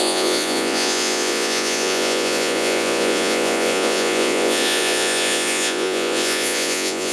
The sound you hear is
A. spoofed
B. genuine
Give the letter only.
A